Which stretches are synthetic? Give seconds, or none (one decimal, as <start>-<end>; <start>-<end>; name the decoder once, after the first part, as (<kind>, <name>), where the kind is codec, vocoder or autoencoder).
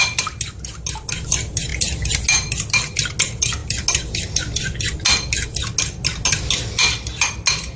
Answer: none